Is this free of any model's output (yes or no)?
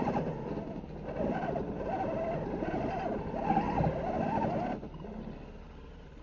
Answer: yes